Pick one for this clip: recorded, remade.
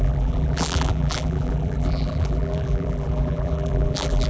remade